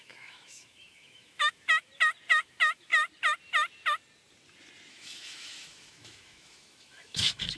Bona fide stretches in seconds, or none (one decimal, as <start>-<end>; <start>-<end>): 1.9-2.4; 2.9-4.9